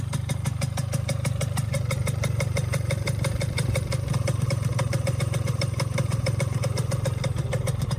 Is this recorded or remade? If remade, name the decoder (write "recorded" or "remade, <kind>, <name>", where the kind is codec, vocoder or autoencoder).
remade, vocoder, BigVGAN v2